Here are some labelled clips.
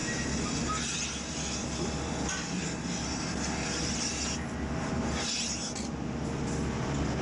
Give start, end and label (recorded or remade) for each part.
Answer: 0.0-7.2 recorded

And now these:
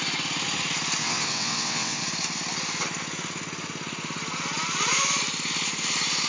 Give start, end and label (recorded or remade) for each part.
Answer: 0.0-1.0 recorded; 1.0-2.0 remade; 2.0-6.3 recorded

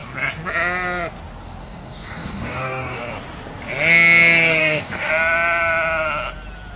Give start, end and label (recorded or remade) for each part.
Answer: 0.0-1.6 recorded; 1.6-3.0 remade; 3.0-4.6 recorded; 4.6-5.1 remade; 5.1-6.8 recorded

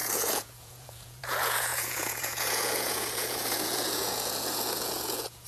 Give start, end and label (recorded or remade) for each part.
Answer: 0.0-5.5 remade